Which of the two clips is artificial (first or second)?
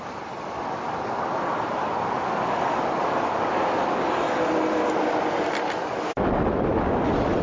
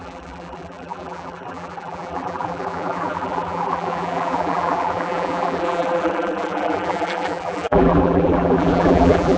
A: second